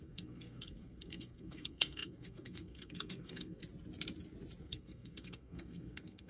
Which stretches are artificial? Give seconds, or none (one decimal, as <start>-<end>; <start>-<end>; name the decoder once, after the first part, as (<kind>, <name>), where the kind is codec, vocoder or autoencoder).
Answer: 0.0-3.6 (codec, SNAC); 4.6-6.3

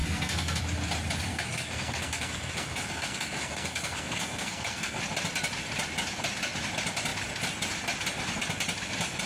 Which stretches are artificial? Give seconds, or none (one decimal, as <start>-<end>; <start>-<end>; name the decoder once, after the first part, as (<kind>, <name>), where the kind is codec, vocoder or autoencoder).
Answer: 0.0-0.6 (codec, SNAC); 1.3-5.0

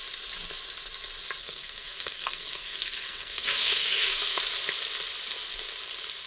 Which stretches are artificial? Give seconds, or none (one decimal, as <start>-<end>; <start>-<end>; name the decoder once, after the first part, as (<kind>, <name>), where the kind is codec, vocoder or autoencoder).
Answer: 1.4-4.4 (codec, SNAC)

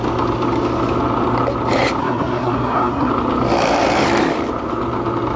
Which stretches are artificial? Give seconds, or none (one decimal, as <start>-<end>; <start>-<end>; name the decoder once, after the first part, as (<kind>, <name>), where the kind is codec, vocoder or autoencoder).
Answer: 2.0-3.1 (codec, SNAC)

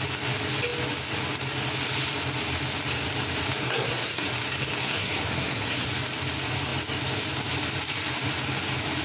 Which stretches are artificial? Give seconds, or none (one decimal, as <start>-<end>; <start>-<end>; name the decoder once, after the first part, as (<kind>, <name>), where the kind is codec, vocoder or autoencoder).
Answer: 3.6-4.3 (codec, SNAC); 4.8-5.9

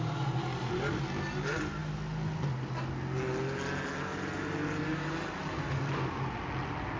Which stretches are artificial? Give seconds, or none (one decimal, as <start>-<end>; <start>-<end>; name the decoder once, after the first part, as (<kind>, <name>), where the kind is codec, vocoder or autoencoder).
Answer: none

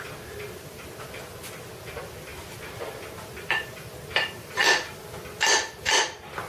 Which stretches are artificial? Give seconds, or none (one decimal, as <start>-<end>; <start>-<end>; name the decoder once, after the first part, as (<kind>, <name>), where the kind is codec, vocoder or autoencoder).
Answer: none

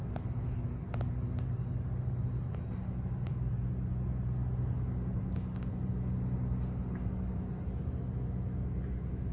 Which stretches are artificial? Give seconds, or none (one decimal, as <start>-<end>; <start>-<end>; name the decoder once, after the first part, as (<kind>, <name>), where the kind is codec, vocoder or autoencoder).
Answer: none